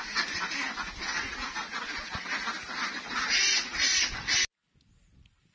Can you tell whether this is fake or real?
real